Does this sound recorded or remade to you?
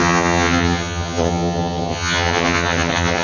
remade